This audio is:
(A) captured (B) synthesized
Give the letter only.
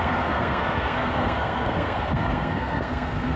B